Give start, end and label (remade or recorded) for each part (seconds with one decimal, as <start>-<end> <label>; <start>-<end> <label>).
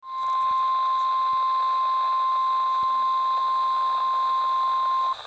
0.0-5.3 recorded